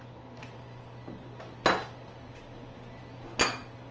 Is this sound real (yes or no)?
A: yes